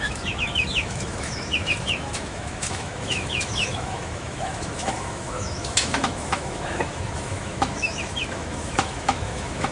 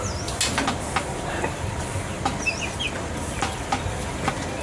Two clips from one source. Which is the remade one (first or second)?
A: first